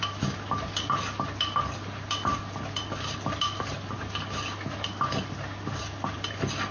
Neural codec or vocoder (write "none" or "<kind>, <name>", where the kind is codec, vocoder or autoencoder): none